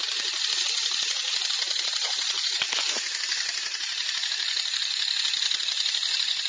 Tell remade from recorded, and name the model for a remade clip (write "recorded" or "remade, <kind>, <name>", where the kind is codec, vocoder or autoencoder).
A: recorded